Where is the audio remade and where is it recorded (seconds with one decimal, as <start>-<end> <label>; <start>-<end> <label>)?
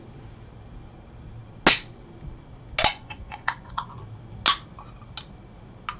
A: 0.0-2.9 recorded; 2.9-4.0 remade; 4.0-6.0 recorded